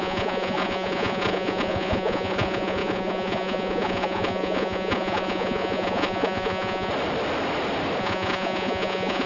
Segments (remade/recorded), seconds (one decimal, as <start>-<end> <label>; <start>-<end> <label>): 0.0-6.9 remade; 6.9-8.0 recorded; 8.0-9.3 remade